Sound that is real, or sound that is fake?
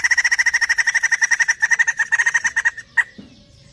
fake